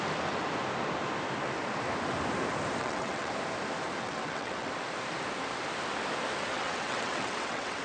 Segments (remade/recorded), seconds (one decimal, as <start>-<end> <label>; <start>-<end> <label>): 0.0-2.8 recorded; 2.8-3.3 remade; 3.3-4.0 recorded; 4.0-4.7 remade; 4.7-6.5 recorded; 6.5-7.8 remade